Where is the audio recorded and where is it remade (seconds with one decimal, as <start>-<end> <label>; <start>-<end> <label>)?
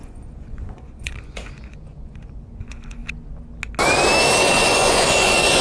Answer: 0.0-3.0 remade; 3.0-4.4 recorded; 4.4-5.6 remade